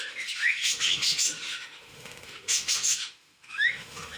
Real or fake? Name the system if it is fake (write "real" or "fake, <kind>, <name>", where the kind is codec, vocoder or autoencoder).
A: fake, autoencoder, DAC-VAE